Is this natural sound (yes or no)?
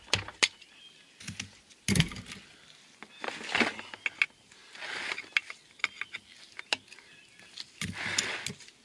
yes